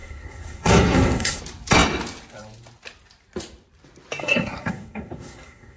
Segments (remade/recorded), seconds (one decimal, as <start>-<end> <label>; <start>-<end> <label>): 0.0-1.4 remade; 1.4-4.2 recorded; 4.2-5.8 remade